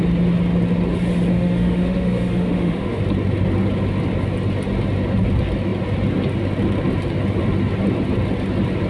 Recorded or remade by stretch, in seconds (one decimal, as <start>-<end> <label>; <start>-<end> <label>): 0.0-1.3 recorded; 1.3-3.0 remade; 3.0-8.9 recorded